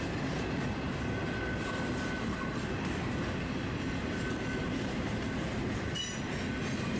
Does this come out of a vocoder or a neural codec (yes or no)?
no